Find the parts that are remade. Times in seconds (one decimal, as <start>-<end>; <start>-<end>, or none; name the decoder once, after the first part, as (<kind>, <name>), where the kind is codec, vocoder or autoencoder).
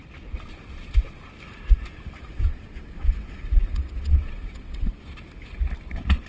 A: 2.3-4.9 (vocoder, WaveNeXt)